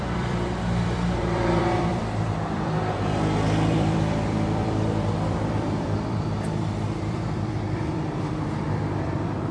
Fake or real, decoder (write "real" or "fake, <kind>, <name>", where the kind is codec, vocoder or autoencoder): fake, vocoder, BigVGAN v2